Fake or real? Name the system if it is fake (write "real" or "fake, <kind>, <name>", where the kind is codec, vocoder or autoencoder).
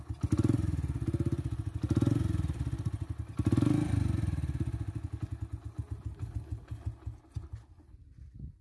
real